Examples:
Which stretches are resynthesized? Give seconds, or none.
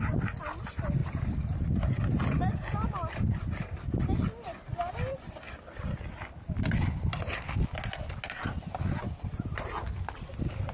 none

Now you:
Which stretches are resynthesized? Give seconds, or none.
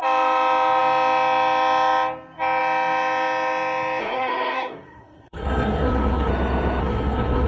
4.0-6.3 (codec, SNAC); 6.8-7.5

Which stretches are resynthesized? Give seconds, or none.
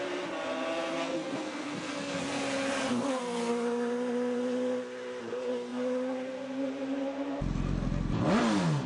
1.0-2.2 (codec, SNAC); 2.9-3.5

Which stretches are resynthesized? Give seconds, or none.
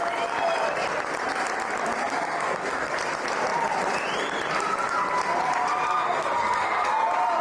2.0-2.9 (codec, SNAC); 5.9-6.9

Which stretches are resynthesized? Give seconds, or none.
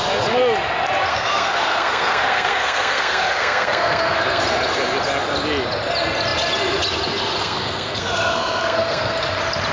1.1-4.4 (codec, SNAC); 7.4-9.2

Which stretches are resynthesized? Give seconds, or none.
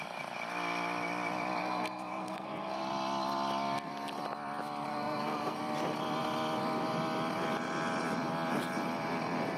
1.6-2.8 (codec, SNAC); 4.9-5.6